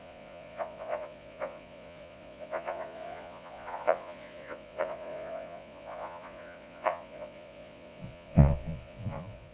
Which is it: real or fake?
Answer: fake